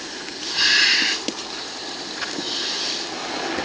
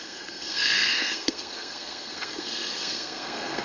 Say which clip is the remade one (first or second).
second